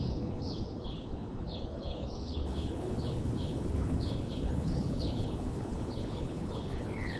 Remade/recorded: remade